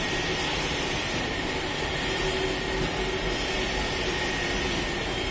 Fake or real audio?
real